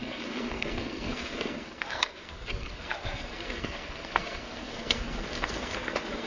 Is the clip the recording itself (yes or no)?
no